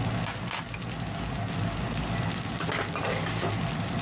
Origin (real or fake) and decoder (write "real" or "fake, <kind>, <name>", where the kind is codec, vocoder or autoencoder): real